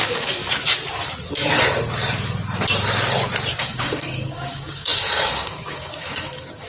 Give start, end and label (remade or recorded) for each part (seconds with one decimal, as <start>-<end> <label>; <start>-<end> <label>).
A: 0.0-0.4 remade; 0.4-3.6 recorded; 3.6-6.7 remade